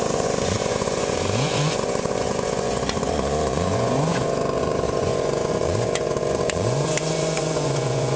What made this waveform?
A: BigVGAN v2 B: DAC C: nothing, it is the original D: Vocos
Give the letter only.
D